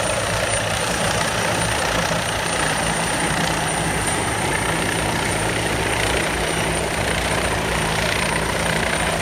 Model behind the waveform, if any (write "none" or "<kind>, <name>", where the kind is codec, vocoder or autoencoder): vocoder, BigVGAN v2